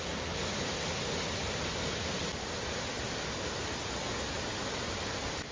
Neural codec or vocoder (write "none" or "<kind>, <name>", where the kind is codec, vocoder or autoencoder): none